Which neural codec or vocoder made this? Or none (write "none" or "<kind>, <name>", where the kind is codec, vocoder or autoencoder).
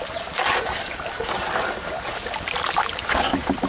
none